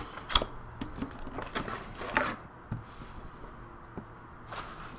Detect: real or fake real